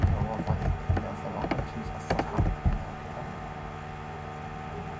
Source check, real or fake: real